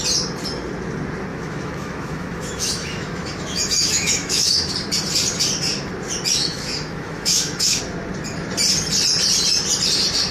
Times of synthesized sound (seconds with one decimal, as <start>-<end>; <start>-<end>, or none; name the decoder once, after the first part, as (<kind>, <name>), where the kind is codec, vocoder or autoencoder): 1.3-4.7 (autoencoder, DAC-VAE); 6.4-7.8